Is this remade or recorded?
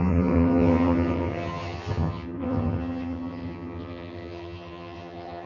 remade